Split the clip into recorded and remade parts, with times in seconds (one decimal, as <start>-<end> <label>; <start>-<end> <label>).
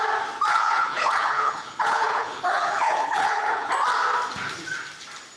0.0-0.5 recorded; 0.5-3.7 remade; 3.7-5.4 recorded